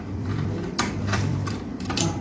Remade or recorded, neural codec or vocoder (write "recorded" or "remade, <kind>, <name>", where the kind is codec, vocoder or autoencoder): remade, vocoder, BigVGAN v2